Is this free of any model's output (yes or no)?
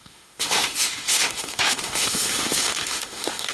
no